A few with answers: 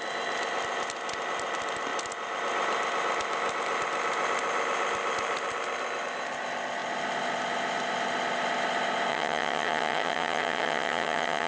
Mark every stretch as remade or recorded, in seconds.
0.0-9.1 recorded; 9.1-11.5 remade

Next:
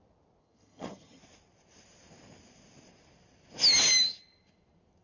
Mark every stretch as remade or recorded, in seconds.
0.0-0.4 recorded; 0.4-1.2 remade; 1.2-5.0 recorded

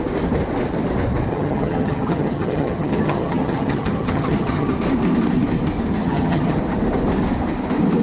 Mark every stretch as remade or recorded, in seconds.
0.0-1.3 recorded; 1.3-4.7 remade; 4.7-6.0 recorded; 6.0-6.6 remade; 6.6-8.0 recorded

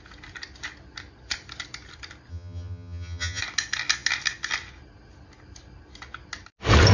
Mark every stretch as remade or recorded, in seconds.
0.0-2.3 recorded; 2.3-3.4 remade; 3.4-6.9 recorded